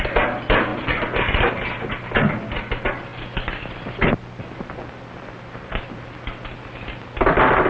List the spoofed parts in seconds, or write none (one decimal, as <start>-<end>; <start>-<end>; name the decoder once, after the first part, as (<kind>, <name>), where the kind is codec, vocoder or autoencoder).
none

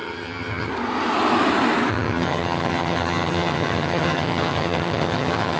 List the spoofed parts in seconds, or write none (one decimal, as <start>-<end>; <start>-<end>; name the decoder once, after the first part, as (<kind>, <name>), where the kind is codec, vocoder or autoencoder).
0.0-0.7 (vocoder, HiFi-GAN); 1.9-5.6

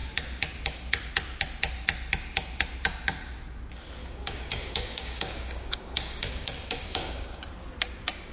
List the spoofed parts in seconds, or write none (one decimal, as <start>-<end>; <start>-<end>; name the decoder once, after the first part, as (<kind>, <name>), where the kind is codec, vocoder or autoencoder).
4.0-7.4 (codec, DAC)

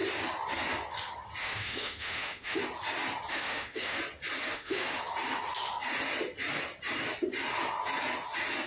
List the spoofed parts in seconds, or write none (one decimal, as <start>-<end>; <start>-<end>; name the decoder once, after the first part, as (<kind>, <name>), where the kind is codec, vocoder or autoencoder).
1.4-2.6 (autoencoder, DAC-VAE); 3.3-4.0; 4.4-5.0

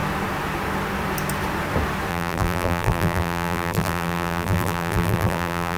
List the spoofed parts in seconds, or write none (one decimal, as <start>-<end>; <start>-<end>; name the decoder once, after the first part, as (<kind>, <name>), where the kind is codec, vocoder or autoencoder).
2.1-5.8 (vocoder, BigVGAN v2)

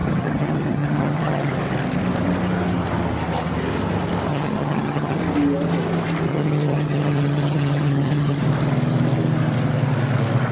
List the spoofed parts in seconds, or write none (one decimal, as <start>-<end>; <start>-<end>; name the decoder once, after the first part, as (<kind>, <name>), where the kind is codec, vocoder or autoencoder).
0.0-1.5 (vocoder, HiFi-GAN); 4.3-5.2; 6.3-8.4